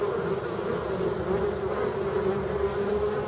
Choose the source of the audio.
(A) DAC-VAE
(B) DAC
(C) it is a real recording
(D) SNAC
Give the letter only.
C